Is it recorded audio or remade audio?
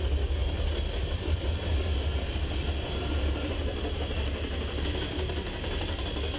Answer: recorded